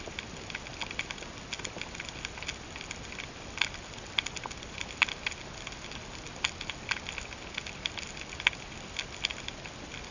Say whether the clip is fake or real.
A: real